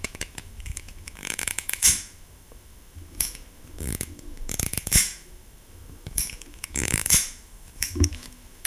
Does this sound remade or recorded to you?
remade